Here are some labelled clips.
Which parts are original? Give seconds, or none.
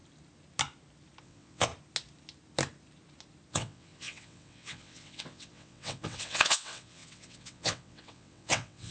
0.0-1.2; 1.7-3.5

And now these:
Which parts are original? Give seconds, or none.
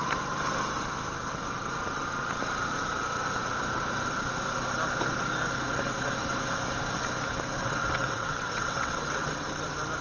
0.0-7.6; 9.4-10.0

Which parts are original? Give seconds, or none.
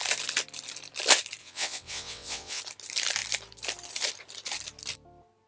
0.0-1.4; 2.6-5.5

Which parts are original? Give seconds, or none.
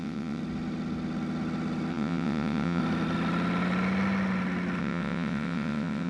0.4-1.9; 2.8-4.8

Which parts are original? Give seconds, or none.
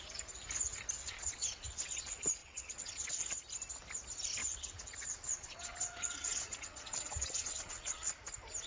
0.0-1.0; 2.0-2.4; 3.2-4.4; 8.1-8.7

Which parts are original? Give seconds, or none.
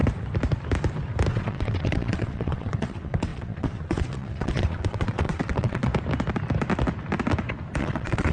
0.0-1.3; 5.9-7.8